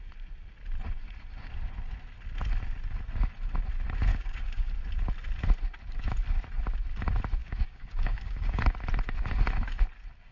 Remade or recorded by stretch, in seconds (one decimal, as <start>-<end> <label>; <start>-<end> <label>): 0.0-4.1 recorded; 4.1-4.7 remade; 4.7-7.4 recorded; 7.4-8.6 remade; 8.6-10.3 recorded